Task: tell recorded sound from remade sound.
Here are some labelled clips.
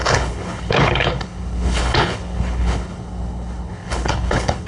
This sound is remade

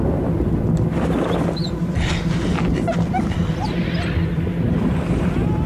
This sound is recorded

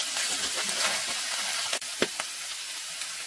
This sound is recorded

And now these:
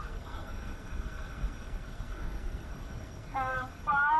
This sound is remade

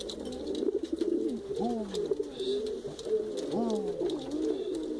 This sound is recorded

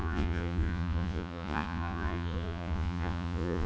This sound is remade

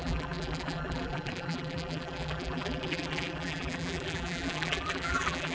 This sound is remade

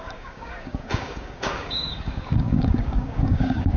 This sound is remade